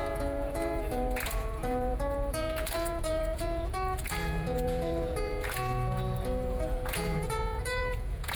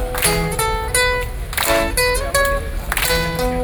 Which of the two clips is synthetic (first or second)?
first